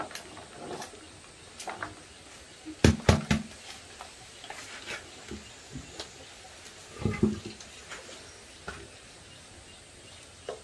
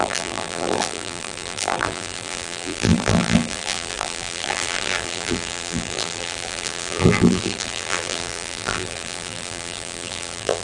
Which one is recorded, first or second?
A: first